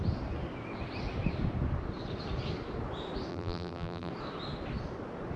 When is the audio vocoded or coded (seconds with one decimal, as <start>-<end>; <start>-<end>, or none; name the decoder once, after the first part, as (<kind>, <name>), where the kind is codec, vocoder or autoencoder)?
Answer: 3.3-4.1 (vocoder, BigVGAN v2)